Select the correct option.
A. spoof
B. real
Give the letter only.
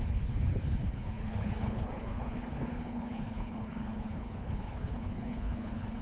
A